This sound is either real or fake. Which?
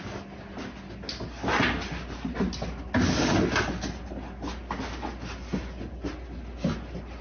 real